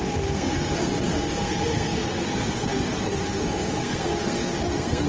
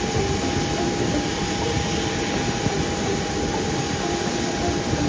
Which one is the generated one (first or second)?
first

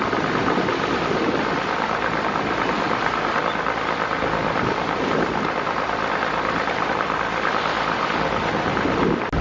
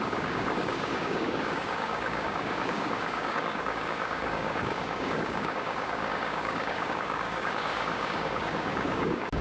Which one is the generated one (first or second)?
second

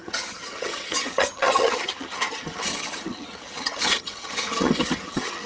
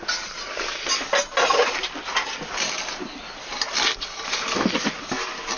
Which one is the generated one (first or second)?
first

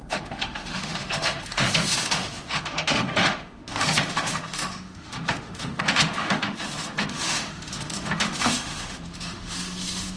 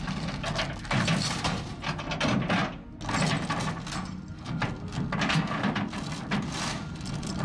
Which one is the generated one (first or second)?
first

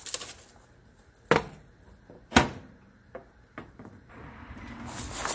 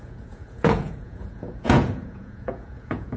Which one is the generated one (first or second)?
second